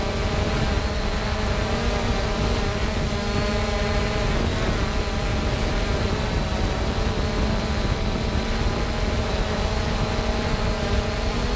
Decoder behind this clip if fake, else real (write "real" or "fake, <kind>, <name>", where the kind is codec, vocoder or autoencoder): real